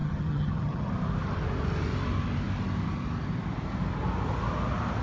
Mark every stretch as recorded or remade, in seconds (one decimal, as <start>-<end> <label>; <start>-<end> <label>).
0.0-0.9 remade; 0.9-5.0 recorded